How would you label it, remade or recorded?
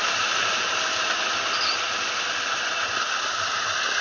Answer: recorded